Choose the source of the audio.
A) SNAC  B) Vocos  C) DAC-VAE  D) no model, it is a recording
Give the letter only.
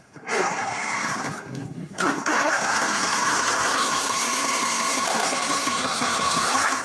A